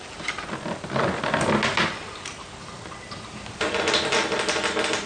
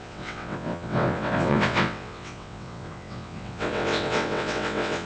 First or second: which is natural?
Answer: first